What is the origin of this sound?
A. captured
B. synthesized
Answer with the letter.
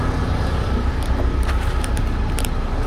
A